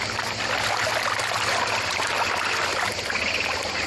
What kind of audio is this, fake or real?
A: real